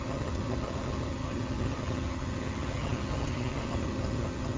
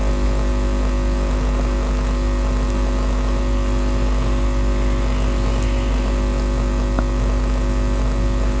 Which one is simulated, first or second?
first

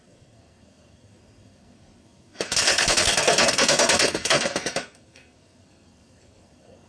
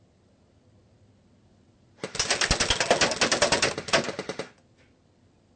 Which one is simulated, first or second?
first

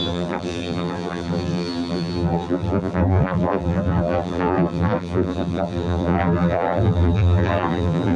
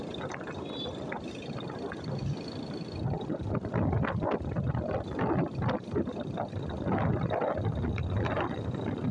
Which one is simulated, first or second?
first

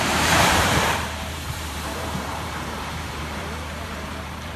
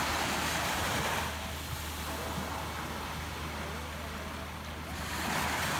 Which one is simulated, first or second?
first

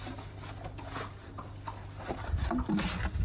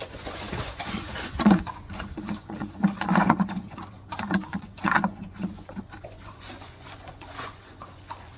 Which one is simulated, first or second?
second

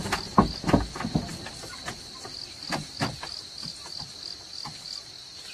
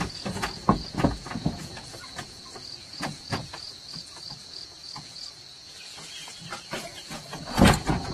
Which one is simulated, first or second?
second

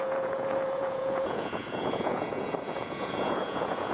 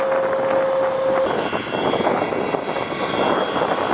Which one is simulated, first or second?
first